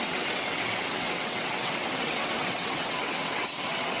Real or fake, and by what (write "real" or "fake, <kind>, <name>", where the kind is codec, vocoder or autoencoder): fake, vocoder, WaveNeXt